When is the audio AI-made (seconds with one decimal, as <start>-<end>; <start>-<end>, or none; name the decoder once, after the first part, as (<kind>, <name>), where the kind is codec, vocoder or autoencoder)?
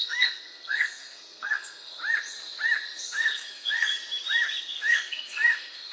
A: 0.0-2.0 (codec, SNAC); 3.0-3.9; 4.6-5.9